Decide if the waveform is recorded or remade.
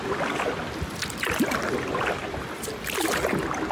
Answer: recorded